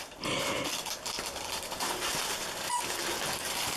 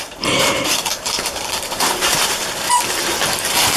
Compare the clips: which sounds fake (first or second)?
second